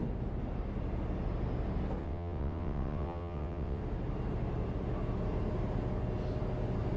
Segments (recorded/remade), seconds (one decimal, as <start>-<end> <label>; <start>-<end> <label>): 0.0-2.0 recorded; 2.0-3.8 remade; 3.8-7.0 recorded